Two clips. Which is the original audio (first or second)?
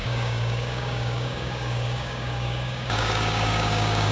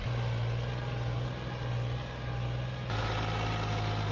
second